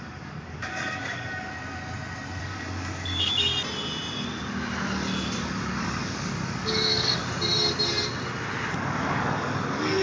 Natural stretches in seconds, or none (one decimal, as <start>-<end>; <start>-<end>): 1.5-2.4; 3.5-5.4; 7.2-8.7